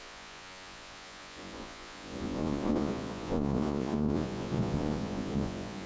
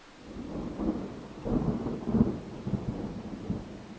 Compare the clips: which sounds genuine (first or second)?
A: second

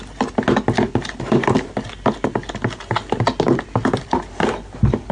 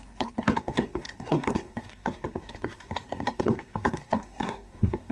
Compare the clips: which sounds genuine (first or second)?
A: first